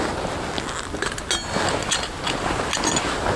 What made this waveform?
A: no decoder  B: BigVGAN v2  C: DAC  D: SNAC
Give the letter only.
A